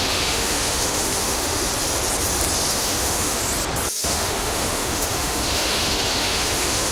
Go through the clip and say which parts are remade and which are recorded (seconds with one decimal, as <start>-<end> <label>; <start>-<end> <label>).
0.0-1.7 remade; 1.7-2.7 recorded; 2.7-3.4 remade; 3.4-4.0 recorded; 4.0-6.9 remade